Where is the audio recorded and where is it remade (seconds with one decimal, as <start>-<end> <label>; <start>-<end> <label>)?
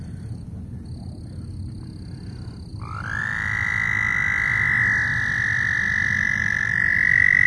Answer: 0.0-7.5 recorded